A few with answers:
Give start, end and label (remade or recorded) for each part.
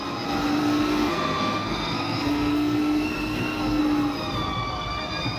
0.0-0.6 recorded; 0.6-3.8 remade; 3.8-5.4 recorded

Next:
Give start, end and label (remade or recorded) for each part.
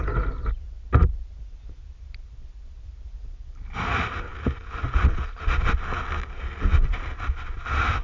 0.0-8.0 recorded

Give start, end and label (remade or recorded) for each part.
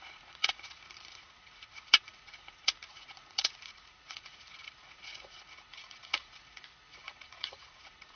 0.0-8.2 remade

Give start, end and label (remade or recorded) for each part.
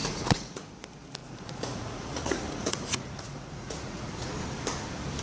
0.0-0.6 remade; 0.6-1.2 recorded; 1.2-4.3 remade; 4.3-5.2 recorded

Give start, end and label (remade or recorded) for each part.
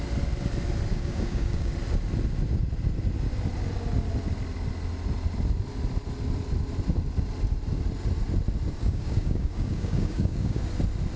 0.0-0.9 recorded; 0.9-1.7 remade; 1.7-8.8 recorded; 8.8-10.6 remade; 10.6-11.2 recorded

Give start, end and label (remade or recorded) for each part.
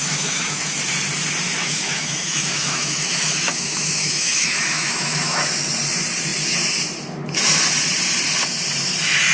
0.0-0.8 remade; 0.8-1.6 recorded; 1.6-5.4 remade; 5.4-9.3 recorded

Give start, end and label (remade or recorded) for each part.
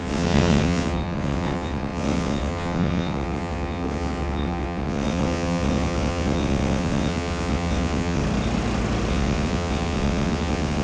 0.0-8.2 remade; 8.2-9.1 recorded; 9.1-10.8 remade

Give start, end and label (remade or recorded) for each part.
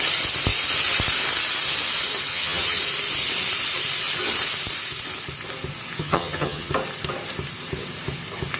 0.0-2.3 recorded; 2.3-2.8 remade; 2.8-6.0 recorded; 6.0-6.7 remade; 6.7-8.6 recorded